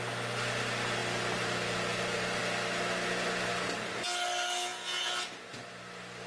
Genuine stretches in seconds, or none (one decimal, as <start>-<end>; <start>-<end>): 0.0-6.3